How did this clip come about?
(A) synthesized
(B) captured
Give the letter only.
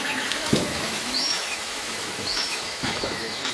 A